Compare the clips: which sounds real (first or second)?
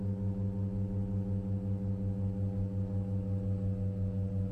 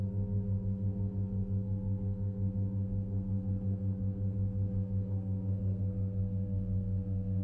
first